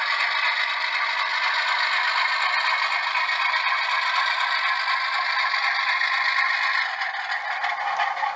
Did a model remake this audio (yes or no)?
no